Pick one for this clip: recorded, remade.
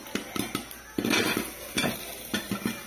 recorded